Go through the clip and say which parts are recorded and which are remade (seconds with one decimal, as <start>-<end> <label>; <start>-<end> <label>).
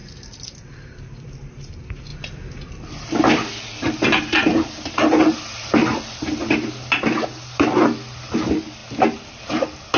0.0-10.0 recorded